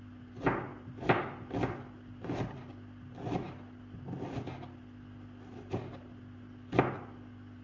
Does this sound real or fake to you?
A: real